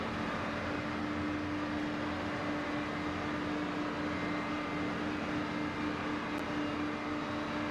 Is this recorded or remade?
recorded